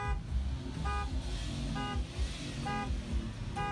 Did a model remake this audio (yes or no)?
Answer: no